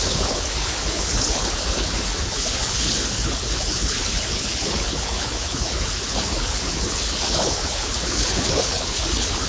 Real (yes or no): no